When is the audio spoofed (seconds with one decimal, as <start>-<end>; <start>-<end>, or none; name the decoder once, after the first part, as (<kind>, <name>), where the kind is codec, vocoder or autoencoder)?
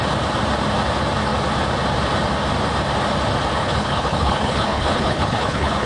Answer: 3.6-5.9 (codec, HILCodec)